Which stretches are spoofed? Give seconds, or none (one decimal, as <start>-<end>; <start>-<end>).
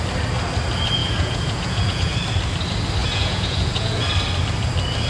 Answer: 1.0-2.1; 3.0-4.1